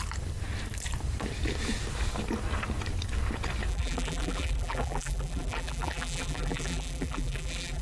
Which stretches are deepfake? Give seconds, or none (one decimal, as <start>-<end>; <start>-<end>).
3.7-7.8